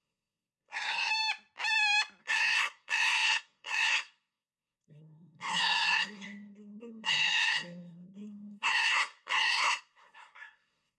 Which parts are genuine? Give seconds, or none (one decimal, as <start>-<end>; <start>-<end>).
1.1-2.2